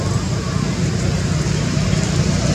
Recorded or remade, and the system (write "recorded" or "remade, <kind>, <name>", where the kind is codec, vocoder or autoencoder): recorded